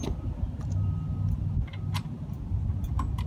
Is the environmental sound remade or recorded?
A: recorded